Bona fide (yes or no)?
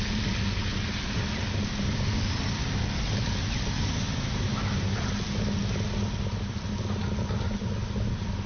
yes